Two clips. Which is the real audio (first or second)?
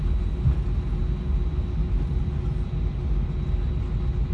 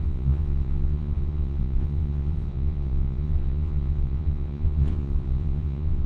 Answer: first